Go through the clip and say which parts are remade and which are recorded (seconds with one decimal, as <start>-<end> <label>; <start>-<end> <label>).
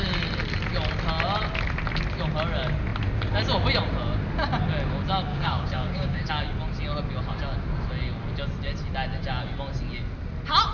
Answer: 0.0-5.3 recorded; 5.3-6.3 remade; 6.3-10.7 recorded